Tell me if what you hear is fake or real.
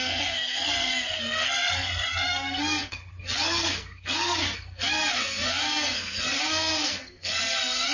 fake